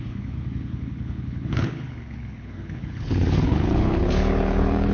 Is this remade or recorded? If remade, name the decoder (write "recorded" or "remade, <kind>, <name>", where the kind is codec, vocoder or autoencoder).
remade, codec, HILCodec